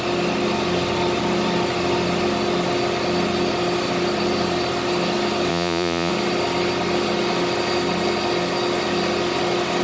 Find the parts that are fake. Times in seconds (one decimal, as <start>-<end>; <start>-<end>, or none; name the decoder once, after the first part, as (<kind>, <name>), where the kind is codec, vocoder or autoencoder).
5.5-6.1 (vocoder, Vocos)